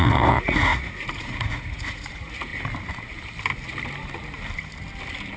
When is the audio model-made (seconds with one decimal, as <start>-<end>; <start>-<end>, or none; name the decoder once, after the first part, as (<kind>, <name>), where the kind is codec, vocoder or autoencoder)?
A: 0.0-2.5 (vocoder, Vocos)